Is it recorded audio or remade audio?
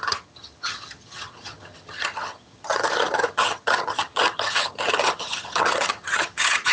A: remade